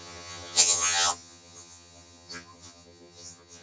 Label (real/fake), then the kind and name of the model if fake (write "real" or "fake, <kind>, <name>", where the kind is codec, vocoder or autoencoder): fake, vocoder, HiFi-GAN